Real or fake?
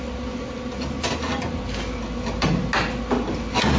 real